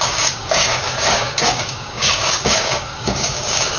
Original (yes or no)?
no